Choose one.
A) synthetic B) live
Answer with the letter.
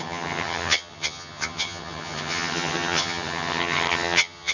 A